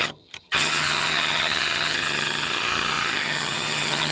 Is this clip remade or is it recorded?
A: remade